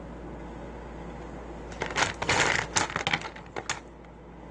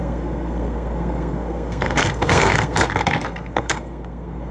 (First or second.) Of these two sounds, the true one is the first